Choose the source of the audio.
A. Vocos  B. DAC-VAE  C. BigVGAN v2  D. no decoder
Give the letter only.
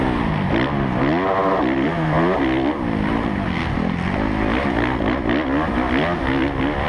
D